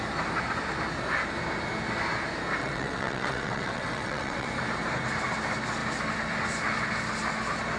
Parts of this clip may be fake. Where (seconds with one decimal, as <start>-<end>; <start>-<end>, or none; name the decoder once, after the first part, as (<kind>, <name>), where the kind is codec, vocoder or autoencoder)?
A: 2.6-4.5 (vocoder, WaveNeXt)